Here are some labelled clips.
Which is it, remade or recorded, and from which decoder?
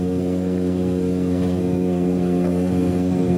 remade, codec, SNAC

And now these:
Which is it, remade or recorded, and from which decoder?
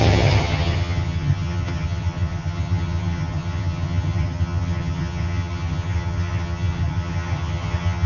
remade, vocoder, HiFi-GAN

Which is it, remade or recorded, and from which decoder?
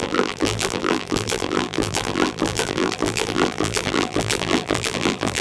remade, vocoder, BigVGAN v2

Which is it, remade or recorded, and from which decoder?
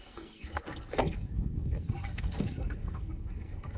remade, codec, SNAC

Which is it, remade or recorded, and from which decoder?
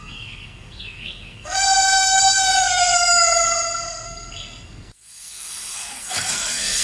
remade, codec, SNAC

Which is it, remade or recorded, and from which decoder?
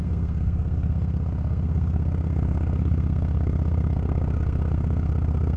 remade, codec, SNAC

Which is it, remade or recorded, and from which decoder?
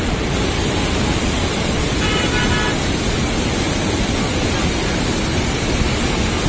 recorded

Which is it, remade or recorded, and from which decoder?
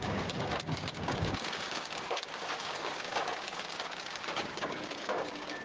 remade, codec, DAC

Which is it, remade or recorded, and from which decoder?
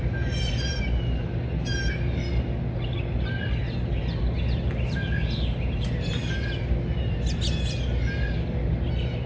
recorded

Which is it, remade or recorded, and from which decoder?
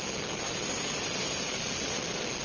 recorded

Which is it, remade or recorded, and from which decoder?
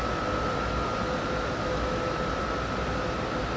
recorded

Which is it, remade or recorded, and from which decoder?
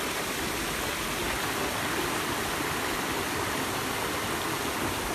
recorded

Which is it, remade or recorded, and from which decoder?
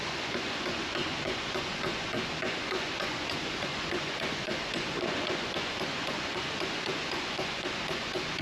remade, vocoder, Vocos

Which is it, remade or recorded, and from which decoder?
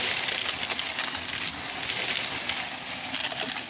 recorded